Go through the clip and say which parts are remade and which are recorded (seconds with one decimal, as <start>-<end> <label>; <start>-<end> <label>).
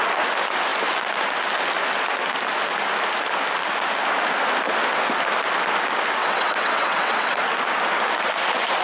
0.0-6.2 recorded; 6.2-7.4 remade; 7.4-8.8 recorded